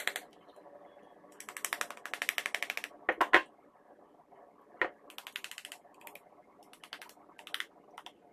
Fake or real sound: real